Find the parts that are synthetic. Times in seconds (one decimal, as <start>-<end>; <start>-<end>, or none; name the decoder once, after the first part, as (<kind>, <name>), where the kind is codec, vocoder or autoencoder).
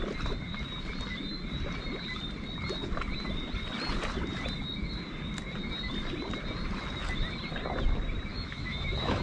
8.3-9.2 (autoencoder, DAC-VAE)